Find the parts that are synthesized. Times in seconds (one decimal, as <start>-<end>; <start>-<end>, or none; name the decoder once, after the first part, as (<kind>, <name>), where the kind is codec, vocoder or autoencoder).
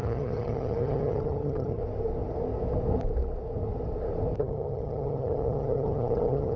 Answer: 0.0-1.8 (vocoder, HiFi-GAN); 4.4-6.6